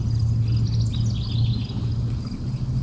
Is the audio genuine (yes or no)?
yes